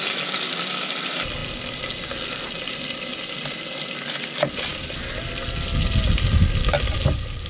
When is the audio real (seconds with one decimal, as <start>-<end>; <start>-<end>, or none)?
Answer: 0.0-7.5